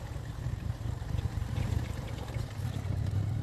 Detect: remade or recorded remade